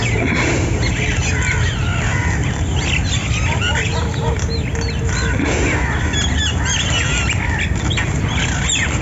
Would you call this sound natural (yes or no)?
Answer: yes